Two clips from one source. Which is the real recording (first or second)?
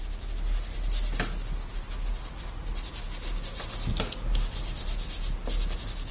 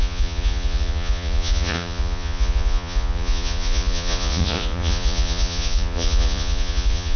first